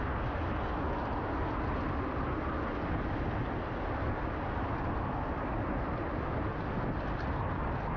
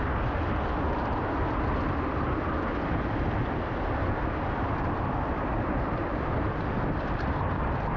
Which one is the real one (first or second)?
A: first